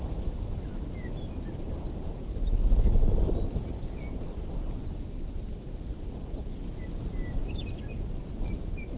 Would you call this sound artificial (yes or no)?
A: no